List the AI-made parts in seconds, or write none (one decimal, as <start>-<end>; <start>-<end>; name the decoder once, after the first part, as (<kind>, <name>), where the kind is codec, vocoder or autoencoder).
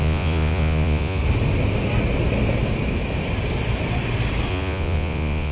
0.0-1.2 (vocoder, Vocos); 4.5-5.5